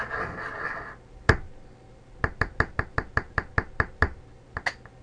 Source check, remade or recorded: recorded